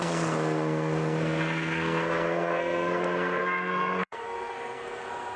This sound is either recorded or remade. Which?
remade